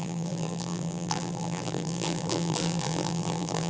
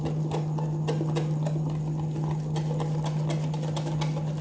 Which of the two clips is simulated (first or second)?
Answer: first